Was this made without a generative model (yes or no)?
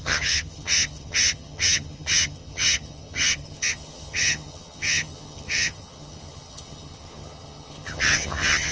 no